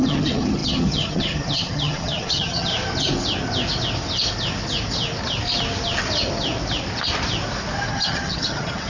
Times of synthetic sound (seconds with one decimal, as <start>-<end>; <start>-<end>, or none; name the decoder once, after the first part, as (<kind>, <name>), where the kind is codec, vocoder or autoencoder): 0.0-2.7 (vocoder, HiFi-GAN); 7.9-8.9